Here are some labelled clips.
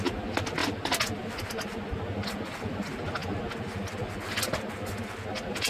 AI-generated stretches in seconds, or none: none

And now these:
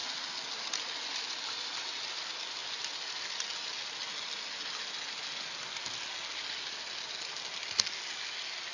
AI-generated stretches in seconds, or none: none

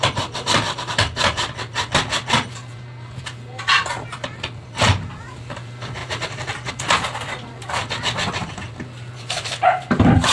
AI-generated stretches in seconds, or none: none